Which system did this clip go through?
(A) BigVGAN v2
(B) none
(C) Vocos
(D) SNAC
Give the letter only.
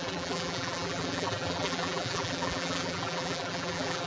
A